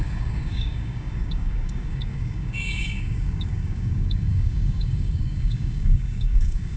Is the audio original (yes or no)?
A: no